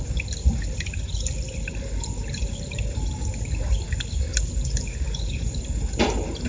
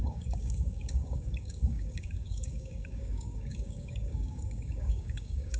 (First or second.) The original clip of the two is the first